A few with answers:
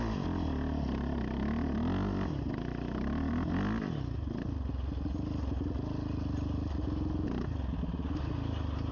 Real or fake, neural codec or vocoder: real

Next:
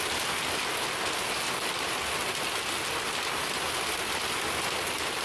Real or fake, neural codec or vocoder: real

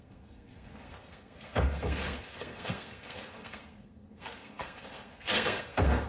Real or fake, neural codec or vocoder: fake, codec, SNAC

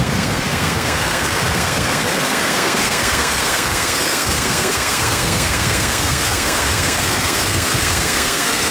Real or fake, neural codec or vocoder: fake, codec, SNAC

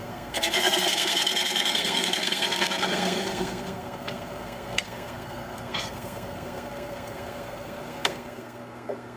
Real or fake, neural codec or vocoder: fake, codec, SNAC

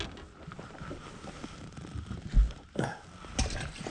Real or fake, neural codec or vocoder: real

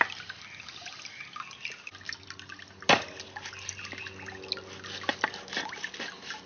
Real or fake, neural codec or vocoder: real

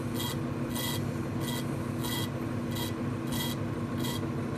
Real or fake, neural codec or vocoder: real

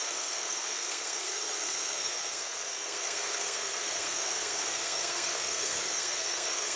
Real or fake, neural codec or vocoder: fake, codec, SNAC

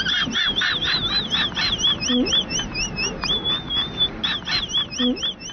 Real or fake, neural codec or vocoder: real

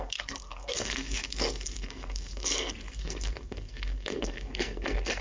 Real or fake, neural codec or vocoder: fake, codec, SNAC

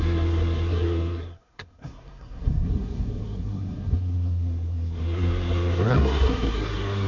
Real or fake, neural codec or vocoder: fake, codec, SNAC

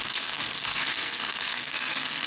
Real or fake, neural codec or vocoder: fake, codec, SNAC